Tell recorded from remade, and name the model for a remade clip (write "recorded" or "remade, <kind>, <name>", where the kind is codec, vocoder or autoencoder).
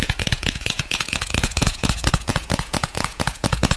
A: remade, vocoder, Vocos